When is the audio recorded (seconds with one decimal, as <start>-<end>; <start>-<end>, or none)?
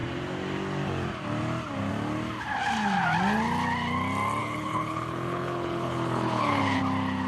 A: 0.0-4.4; 6.8-7.3